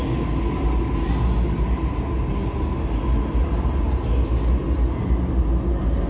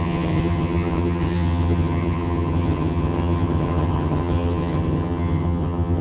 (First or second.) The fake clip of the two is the second